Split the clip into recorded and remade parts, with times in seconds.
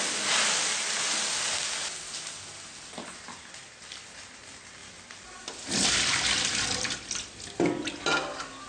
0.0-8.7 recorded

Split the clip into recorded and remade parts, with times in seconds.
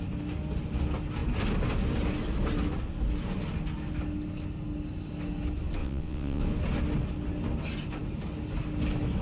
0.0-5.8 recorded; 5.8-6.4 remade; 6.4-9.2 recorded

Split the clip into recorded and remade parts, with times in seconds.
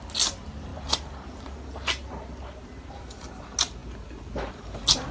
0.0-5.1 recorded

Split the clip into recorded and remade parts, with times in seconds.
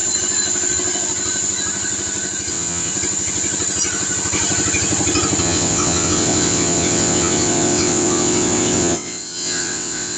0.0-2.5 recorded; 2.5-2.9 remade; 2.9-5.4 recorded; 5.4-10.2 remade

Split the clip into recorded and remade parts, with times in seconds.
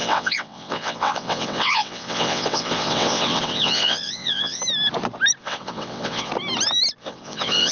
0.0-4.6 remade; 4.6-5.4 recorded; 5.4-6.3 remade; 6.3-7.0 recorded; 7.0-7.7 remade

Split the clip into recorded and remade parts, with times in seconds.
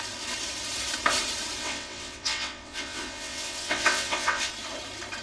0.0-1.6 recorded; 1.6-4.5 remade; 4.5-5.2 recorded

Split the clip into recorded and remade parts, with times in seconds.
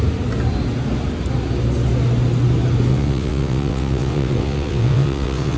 0.0-2.9 recorded; 2.9-5.6 remade